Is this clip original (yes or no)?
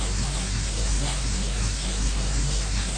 no